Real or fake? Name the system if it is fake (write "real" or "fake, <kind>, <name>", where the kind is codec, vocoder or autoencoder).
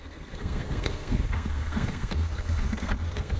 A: fake, codec, SNAC